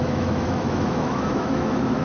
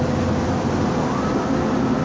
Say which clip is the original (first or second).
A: second